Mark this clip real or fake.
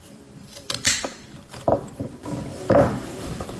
fake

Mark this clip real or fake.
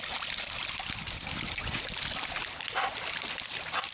real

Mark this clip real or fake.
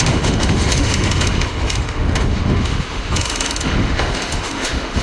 fake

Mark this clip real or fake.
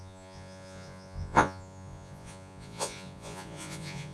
fake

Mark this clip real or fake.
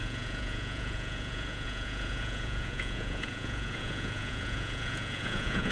fake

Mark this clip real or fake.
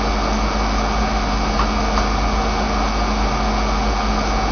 real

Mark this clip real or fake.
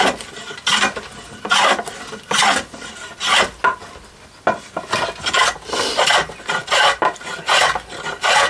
real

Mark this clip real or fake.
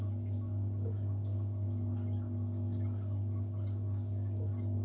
fake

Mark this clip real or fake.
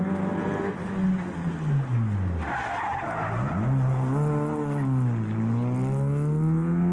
real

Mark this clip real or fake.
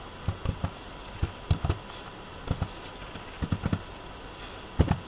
real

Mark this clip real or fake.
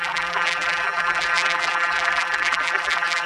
fake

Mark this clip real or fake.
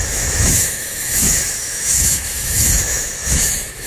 fake